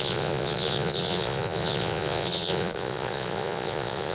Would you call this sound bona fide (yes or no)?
no